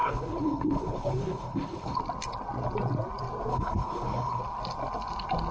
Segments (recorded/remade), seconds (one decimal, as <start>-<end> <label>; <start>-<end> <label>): 0.0-2.0 remade; 2.0-3.5 recorded; 3.5-4.4 remade; 4.4-5.5 recorded